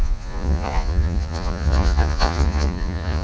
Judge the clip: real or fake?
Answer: fake